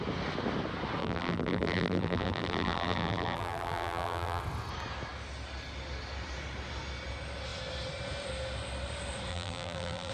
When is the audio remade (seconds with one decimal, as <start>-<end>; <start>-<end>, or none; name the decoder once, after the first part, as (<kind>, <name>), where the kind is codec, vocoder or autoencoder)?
1.0-4.4 (vocoder, BigVGAN v2); 9.3-10.1